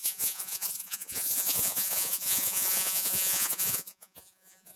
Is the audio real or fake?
fake